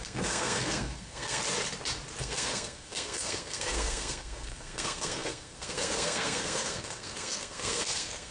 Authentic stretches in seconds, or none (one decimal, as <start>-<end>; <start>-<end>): 1.4-2.2